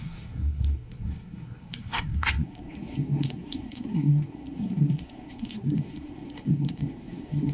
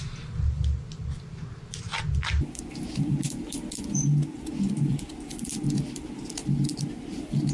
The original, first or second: second